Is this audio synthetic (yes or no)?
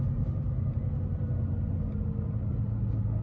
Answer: no